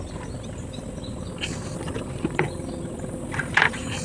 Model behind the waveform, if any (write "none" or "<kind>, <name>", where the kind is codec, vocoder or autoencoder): vocoder, BigVGAN v2